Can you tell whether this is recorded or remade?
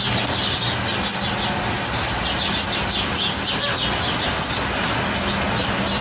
recorded